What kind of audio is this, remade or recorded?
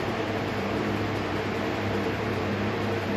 remade